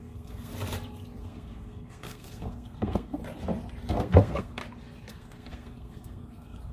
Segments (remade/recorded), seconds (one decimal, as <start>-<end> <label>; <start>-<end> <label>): 0.0-0.5 remade; 0.5-1.2 recorded; 1.2-3.2 remade; 3.2-3.9 recorded; 3.9-4.6 remade; 4.6-5.1 recorded; 5.1-6.7 remade